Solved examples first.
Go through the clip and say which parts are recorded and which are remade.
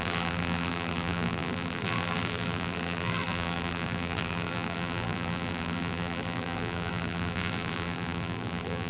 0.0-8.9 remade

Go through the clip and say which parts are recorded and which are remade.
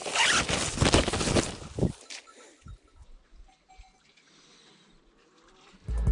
0.0-6.1 recorded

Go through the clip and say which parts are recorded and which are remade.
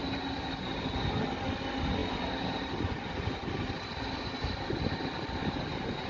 0.0-0.9 remade; 0.9-2.0 recorded; 2.0-3.8 remade; 3.8-5.4 recorded; 5.4-6.1 remade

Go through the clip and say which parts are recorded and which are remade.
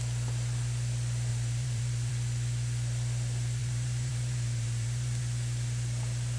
0.0-1.3 recorded; 1.3-2.1 remade; 2.1-3.6 recorded; 3.6-5.2 remade; 5.2-6.4 recorded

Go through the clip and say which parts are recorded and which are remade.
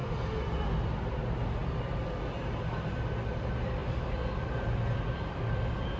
0.0-1.6 recorded; 1.6-2.3 remade; 2.3-3.8 recorded; 3.8-6.0 remade